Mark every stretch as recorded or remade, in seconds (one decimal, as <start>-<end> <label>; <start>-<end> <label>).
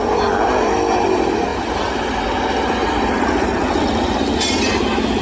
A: 0.0-5.2 recorded